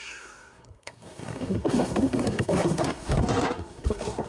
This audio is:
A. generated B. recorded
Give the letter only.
A